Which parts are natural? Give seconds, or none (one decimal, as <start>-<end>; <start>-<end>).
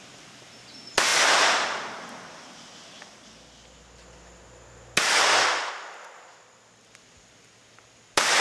0.0-8.4